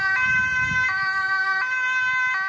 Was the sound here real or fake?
real